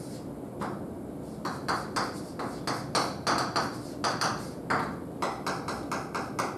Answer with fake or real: real